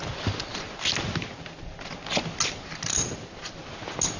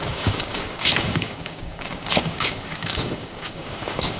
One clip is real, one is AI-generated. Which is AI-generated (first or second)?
second